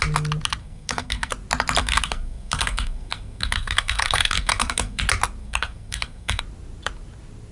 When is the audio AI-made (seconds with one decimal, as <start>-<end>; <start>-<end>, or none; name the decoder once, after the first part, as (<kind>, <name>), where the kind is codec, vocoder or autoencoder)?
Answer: 0.6-1.3 (codec, SNAC); 1.8-5.0; 5.4-6.4

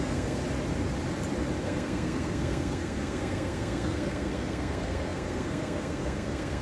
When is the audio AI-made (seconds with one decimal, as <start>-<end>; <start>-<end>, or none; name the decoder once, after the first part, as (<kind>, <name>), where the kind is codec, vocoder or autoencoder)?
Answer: 0.0-0.4 (codec, SNAC); 1.6-6.6

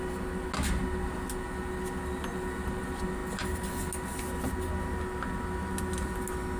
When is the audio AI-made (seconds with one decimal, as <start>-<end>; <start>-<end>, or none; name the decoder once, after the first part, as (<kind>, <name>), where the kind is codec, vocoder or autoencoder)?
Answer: none

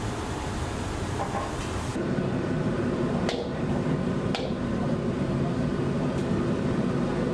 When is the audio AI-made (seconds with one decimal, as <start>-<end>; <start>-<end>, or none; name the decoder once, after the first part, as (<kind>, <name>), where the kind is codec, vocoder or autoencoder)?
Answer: none

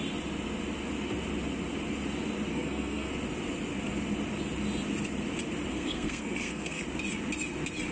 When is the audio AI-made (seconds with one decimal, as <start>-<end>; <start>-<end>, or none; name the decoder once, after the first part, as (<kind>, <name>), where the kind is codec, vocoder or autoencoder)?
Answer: 2.5-3.1 (codec, SNAC); 5.7-6.8

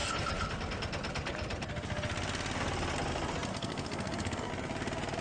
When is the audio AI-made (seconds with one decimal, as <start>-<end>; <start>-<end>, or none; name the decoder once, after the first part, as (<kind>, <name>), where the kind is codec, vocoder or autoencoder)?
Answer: 3.5-4.5 (codec, SNAC)